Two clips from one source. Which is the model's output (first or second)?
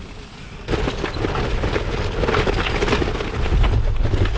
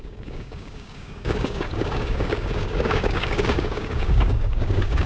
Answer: second